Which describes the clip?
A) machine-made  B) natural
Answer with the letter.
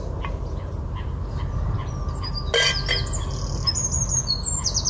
B